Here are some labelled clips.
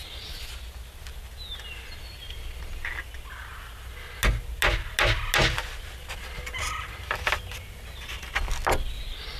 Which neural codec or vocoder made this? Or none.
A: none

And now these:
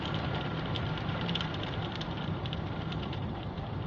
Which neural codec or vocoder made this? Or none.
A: vocoder, BigVGAN v2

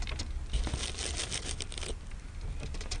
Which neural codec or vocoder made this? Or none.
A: none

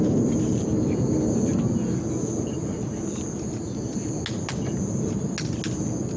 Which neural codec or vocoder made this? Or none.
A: none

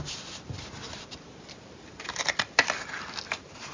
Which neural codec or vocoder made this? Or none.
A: vocoder, BigVGAN v2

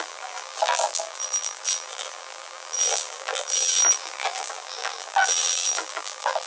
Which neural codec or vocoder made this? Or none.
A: vocoder, BigVGAN v2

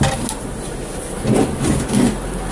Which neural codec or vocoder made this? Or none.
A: none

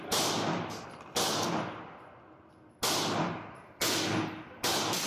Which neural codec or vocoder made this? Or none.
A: none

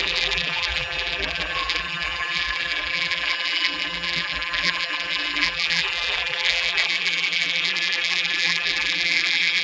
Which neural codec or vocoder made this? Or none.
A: vocoder, BigVGAN v2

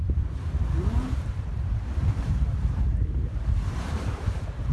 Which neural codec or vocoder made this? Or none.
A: vocoder, BigVGAN v2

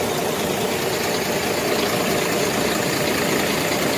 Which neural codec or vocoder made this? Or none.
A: none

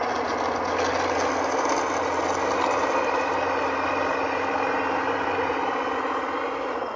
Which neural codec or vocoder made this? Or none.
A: none